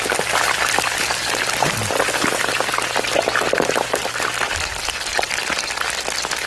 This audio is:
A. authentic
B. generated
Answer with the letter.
A